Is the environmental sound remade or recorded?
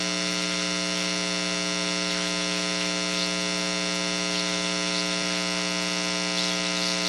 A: recorded